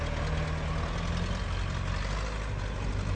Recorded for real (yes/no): yes